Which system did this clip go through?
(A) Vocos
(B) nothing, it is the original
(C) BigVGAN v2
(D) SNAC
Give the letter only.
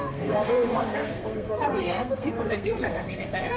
D